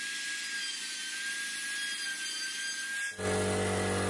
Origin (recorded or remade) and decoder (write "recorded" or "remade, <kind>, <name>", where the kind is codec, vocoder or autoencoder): recorded